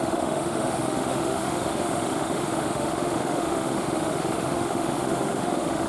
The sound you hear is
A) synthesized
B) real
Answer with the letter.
A